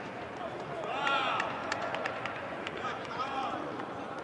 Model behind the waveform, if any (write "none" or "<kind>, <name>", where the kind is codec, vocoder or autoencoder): vocoder, Vocos